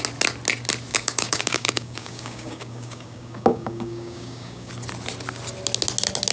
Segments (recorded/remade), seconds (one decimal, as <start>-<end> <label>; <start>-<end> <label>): 0.0-0.9 recorded; 0.9-4.7 remade; 4.7-6.3 recorded